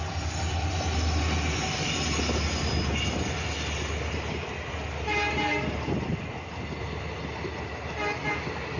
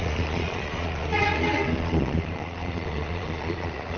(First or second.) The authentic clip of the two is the first